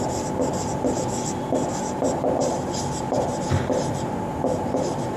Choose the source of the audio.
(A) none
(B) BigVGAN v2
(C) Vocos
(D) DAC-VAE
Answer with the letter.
B